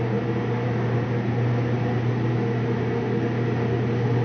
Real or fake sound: real